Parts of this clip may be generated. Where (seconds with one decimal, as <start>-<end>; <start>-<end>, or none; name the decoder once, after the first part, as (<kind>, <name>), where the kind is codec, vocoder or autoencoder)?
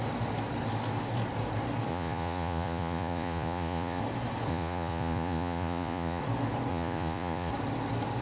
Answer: 1.9-4.0 (vocoder, Vocos); 4.5-6.2; 6.7-7.5